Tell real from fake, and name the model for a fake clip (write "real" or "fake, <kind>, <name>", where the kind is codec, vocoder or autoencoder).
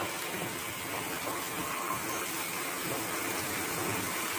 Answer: real